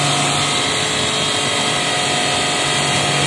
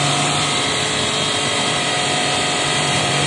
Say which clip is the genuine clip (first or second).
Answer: first